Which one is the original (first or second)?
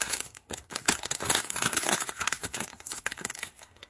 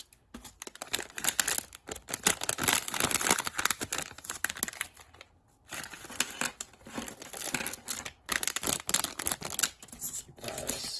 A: second